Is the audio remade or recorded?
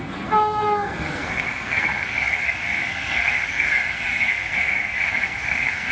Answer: remade